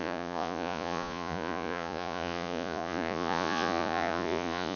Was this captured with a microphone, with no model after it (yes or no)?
no